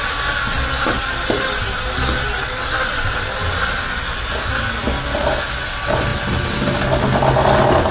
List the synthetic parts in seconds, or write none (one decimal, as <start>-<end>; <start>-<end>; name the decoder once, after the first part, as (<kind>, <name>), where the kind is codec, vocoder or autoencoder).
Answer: none